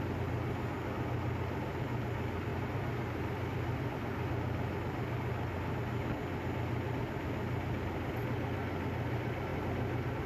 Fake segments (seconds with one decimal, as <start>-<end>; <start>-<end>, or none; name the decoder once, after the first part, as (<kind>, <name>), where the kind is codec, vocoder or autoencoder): 2.5-3.9 (vocoder, BigVGAN v2)